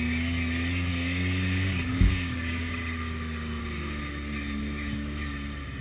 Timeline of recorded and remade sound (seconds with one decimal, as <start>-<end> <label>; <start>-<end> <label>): 0.0-0.9 recorded; 0.9-3.6 remade; 3.6-5.8 recorded